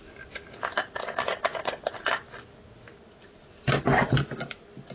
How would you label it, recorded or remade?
recorded